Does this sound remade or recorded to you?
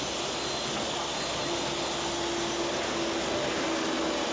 recorded